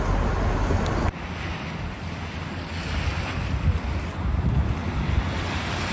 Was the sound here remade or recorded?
recorded